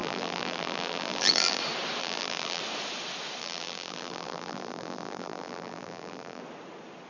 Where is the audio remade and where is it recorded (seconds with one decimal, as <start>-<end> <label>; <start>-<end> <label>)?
0.0-1.6 remade; 1.6-2.0 recorded; 2.0-2.6 remade; 2.6-3.4 recorded; 3.4-6.4 remade; 6.4-7.1 recorded